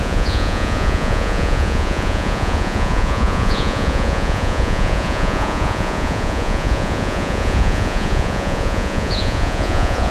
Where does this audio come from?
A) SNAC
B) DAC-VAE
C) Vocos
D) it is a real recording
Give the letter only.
C